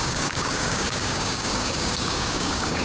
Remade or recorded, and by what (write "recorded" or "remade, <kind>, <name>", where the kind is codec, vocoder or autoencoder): remade, codec, DAC